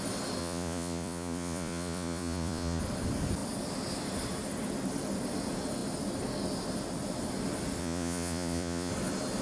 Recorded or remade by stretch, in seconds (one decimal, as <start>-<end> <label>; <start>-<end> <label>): 0.0-0.4 recorded; 0.4-2.8 remade; 2.8-7.8 recorded; 7.8-8.9 remade; 8.9-9.4 recorded